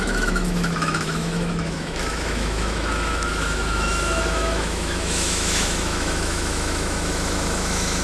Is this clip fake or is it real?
fake